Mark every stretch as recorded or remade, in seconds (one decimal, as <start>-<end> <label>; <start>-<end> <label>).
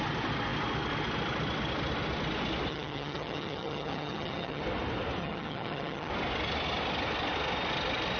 0.0-2.7 recorded; 2.7-4.6 remade; 4.6-5.2 recorded; 5.2-6.1 remade; 6.1-8.2 recorded